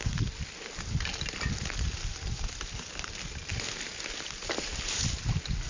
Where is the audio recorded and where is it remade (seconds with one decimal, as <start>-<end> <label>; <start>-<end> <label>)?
0.0-5.7 recorded